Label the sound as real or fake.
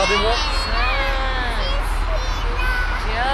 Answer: real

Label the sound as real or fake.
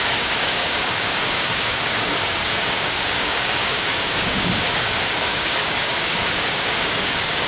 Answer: fake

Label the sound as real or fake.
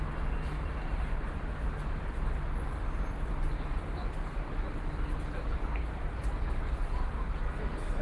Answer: real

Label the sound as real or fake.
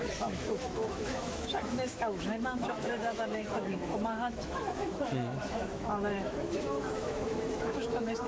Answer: fake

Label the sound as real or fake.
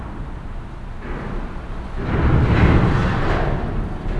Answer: real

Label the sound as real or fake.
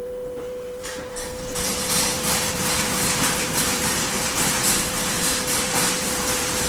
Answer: fake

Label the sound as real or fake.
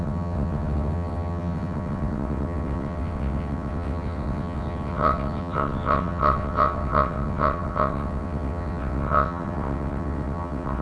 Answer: fake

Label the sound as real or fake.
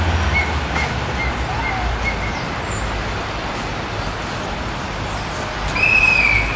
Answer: real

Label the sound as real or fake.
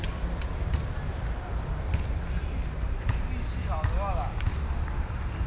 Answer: real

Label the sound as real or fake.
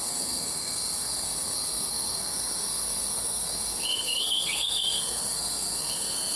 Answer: fake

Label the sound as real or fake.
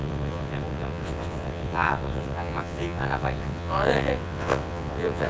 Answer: fake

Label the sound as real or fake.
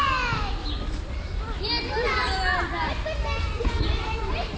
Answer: real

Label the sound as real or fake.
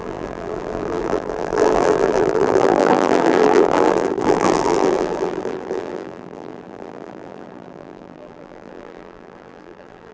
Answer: fake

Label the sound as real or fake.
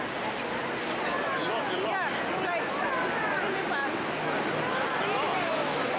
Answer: real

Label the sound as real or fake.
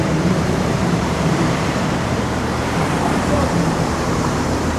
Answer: fake